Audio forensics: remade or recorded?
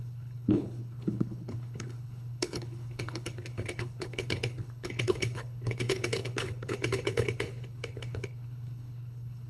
remade